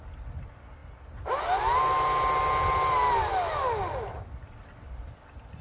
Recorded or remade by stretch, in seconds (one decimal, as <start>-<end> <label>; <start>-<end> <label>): 0.0-5.6 recorded